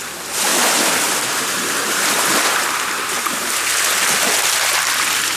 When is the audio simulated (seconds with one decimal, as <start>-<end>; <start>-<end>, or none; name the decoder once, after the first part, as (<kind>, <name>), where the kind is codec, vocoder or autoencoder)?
0.5-3.7 (vocoder, BigVGAN v2)